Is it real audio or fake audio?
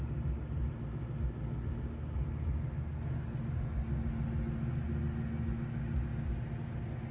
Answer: real